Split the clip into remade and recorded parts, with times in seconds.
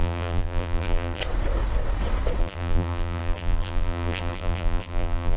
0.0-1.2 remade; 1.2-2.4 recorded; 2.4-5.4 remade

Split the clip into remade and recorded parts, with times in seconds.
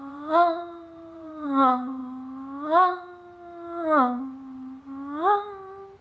0.0-2.0 remade; 2.0-5.6 recorded; 5.6-6.0 remade